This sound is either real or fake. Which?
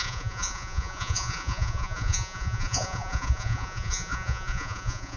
fake